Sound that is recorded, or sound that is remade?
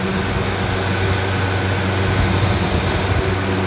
recorded